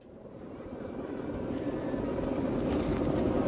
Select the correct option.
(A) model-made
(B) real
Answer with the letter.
B